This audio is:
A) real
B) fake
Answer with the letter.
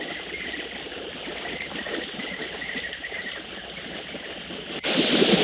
A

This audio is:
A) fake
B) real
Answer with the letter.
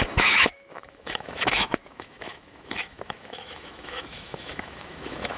A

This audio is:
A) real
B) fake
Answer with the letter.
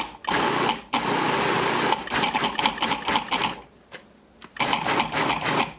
A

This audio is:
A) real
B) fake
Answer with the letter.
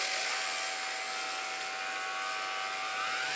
A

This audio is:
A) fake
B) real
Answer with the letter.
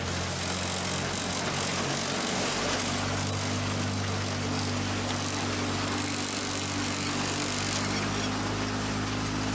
B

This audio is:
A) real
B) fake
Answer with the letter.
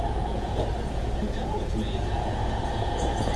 B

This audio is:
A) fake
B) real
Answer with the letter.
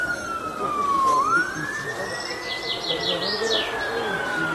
B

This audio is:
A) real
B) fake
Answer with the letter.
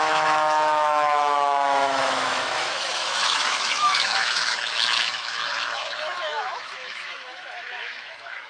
B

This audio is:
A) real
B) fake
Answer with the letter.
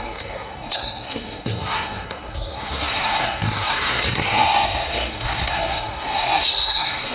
B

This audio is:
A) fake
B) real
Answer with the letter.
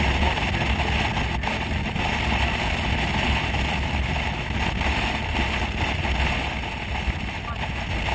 B